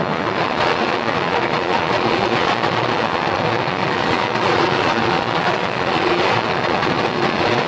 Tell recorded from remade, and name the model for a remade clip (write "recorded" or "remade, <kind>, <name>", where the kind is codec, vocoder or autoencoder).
remade, vocoder, Vocos